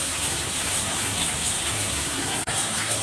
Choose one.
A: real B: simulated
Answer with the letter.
B